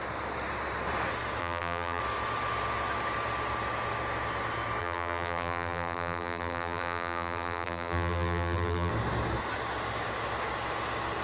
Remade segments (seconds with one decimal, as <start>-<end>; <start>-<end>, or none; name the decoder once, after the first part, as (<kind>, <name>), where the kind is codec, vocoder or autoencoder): 1.4-2.0 (vocoder, BigVGAN v2); 4.8-8.9